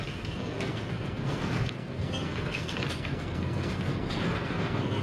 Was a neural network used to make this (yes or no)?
yes